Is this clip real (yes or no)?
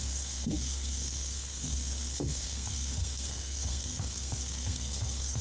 no